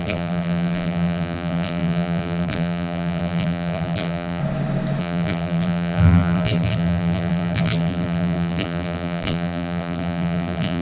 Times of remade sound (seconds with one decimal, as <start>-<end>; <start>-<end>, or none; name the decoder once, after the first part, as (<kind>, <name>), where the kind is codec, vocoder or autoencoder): 0.0-4.4 (vocoder, BigVGAN v2); 5.0-10.8